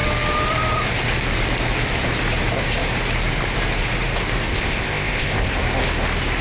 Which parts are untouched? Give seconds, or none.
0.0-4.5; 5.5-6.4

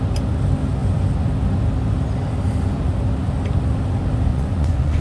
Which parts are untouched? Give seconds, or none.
0.0-4.3

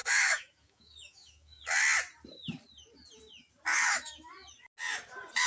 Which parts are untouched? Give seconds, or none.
1.6-3.7; 4.3-5.5

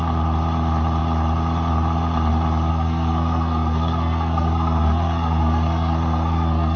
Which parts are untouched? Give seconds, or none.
0.0-2.7

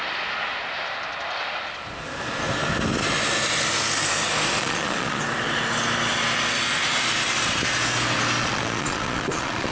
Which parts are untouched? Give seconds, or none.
0.0-4.6; 5.2-8.4